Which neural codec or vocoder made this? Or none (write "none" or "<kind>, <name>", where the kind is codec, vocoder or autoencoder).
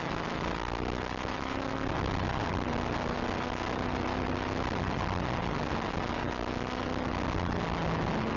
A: none